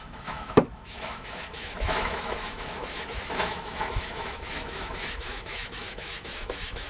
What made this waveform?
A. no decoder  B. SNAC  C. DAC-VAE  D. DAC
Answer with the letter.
C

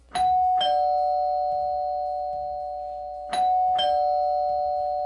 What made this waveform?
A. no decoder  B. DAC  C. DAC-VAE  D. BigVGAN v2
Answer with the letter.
A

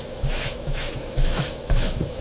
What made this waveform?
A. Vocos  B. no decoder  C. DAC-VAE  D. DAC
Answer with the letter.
C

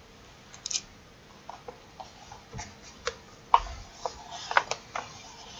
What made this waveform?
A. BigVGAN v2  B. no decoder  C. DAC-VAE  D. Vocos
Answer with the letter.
B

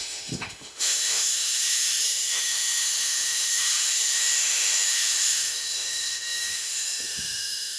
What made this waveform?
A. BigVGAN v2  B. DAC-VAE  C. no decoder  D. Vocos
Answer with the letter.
B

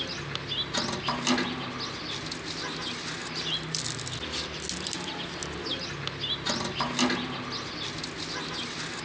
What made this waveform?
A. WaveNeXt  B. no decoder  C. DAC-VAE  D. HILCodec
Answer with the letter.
B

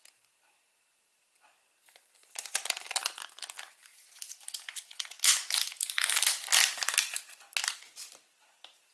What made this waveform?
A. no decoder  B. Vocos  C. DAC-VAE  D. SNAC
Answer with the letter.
A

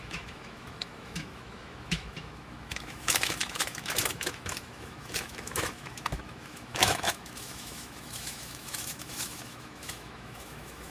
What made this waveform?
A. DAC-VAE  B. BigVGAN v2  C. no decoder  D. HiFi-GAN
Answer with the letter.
A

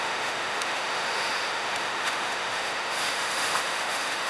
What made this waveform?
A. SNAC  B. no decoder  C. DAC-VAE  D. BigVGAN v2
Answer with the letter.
C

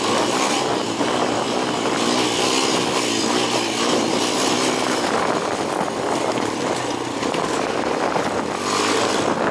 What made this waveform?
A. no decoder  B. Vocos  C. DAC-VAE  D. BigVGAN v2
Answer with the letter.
A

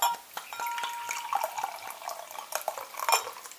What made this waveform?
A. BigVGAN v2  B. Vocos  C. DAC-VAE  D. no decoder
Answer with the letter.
D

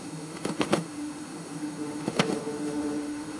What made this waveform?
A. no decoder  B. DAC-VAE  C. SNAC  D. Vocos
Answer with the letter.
B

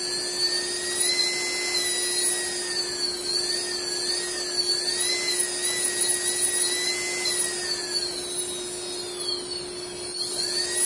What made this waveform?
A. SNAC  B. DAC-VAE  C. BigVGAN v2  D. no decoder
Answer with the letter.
D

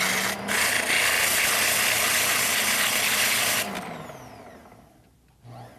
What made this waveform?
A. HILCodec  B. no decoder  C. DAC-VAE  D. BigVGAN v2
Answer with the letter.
B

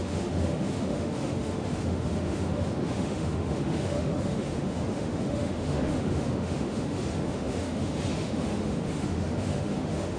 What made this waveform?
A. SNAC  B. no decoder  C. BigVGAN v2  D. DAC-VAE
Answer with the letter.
D